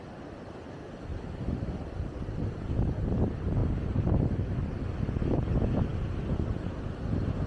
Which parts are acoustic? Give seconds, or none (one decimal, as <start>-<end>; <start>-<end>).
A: 0.0-1.1; 2.6-3.6; 4.8-5.9; 6.5-7.5

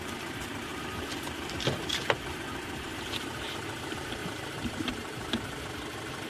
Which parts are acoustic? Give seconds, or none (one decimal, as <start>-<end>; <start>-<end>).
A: 0.0-0.7; 1.5-2.5; 3.6-4.2; 5.6-6.3

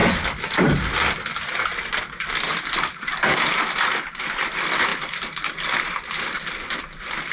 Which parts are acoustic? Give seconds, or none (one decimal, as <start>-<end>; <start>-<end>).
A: 0.0-4.2; 4.9-5.5

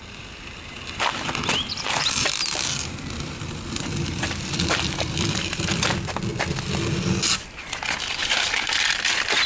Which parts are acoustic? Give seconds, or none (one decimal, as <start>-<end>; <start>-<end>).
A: 6.3-7.4

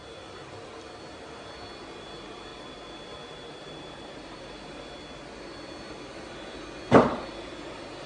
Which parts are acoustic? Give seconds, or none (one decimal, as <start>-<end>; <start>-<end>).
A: 0.0-2.5; 4.4-8.1